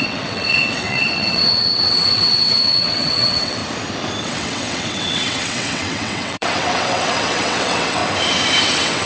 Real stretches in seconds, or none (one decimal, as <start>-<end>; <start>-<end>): 3.6-4.2; 8.0-8.6